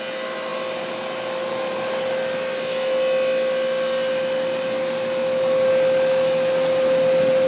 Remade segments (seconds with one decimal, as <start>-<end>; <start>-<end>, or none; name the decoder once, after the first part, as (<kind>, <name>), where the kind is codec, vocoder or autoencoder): none